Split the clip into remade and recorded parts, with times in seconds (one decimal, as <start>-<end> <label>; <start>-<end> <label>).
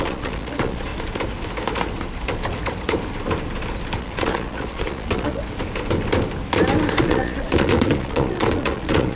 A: 0.0-0.9 remade; 0.9-4.0 recorded; 4.0-5.4 remade; 5.4-7.0 recorded; 7.0-9.2 remade